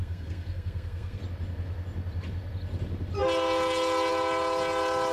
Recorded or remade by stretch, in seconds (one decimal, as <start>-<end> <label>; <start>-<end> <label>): 0.0-1.2 remade; 1.2-5.1 recorded